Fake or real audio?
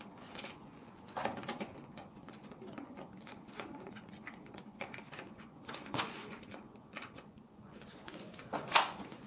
fake